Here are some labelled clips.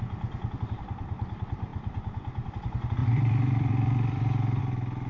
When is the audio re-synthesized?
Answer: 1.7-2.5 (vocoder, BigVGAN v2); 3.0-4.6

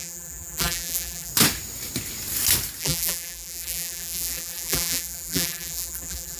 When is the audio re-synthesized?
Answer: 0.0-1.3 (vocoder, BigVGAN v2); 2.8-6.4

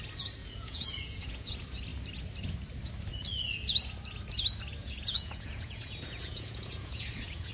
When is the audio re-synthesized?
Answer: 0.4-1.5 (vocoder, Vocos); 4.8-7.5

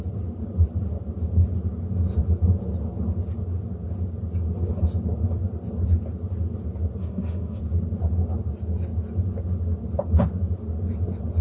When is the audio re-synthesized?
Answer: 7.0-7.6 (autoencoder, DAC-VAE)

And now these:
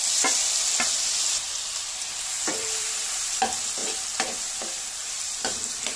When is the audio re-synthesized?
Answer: 2.3-3.3 (vocoder, BigVGAN v2)

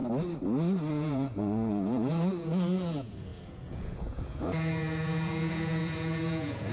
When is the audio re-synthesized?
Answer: 0.9-6.7 (vocoder, Vocos)